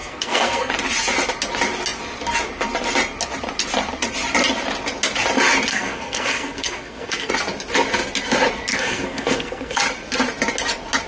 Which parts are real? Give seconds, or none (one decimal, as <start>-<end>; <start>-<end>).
0.7-5.7; 7.3-8.7; 9.8-11.1